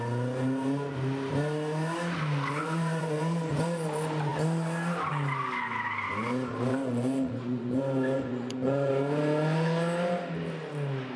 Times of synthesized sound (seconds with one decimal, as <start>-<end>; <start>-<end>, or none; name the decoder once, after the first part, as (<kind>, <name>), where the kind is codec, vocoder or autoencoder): 2.6-3.5 (vocoder, Vocos); 6.7-7.8; 8.3-8.9